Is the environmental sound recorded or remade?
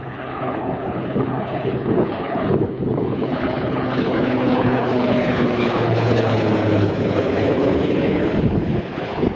remade